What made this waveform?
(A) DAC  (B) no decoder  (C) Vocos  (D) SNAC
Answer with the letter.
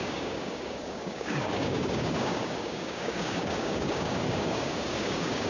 A